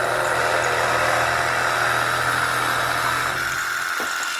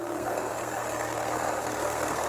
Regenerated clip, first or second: second